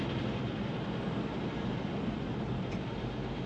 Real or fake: real